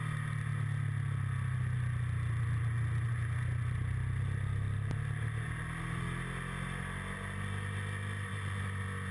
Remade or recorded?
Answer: recorded